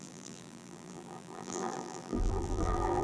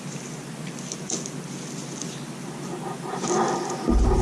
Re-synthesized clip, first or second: first